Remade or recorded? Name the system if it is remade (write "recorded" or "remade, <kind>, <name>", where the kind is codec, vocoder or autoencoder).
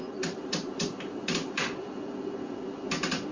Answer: recorded